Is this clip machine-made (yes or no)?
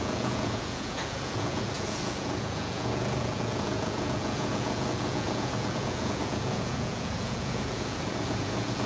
yes